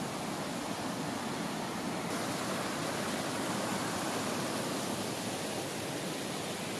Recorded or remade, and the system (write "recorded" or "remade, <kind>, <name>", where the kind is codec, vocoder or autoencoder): recorded